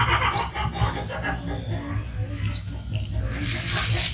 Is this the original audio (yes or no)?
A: yes